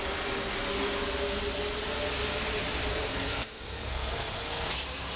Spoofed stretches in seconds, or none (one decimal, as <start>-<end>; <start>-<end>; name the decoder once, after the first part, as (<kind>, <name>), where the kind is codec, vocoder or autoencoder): 2.9-4.7 (codec, SNAC)